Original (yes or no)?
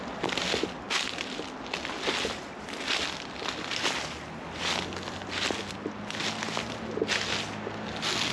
yes